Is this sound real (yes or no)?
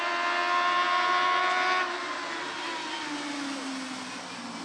yes